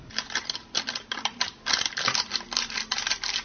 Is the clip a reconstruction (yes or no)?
no